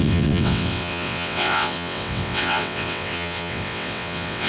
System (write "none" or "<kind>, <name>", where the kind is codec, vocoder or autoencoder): vocoder, WaveNeXt